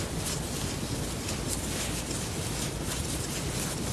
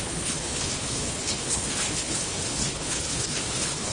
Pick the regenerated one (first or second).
second